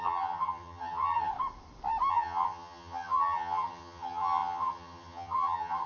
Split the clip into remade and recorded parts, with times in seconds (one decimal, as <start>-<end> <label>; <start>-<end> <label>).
0.0-1.3 remade; 1.3-2.1 recorded; 2.1-5.9 remade